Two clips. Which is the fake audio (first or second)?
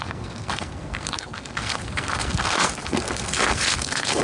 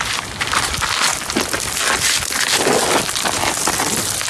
first